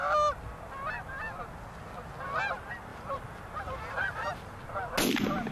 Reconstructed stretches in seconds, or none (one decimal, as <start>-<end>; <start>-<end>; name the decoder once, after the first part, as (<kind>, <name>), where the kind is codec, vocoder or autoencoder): 2.9-4.3 (vocoder, BigVGAN v2)